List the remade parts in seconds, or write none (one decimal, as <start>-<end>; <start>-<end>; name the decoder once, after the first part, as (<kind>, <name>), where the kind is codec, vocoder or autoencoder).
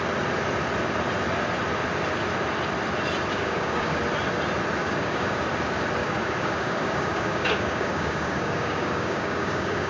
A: 3.3-4.0 (codec, DAC); 4.8-5.4; 6.0-9.9